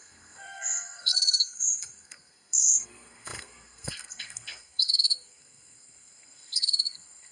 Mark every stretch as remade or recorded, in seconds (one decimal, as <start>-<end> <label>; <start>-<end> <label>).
0.0-7.3 remade